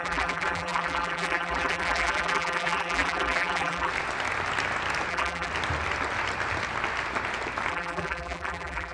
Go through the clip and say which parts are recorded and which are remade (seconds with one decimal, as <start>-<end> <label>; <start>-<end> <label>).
0.0-3.9 remade; 3.9-5.1 recorded; 5.1-5.5 remade; 5.5-7.7 recorded; 7.7-8.9 remade